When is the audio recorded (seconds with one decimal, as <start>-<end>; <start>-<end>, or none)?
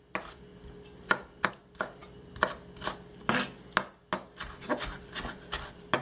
0.0-6.0